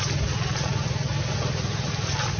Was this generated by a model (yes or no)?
no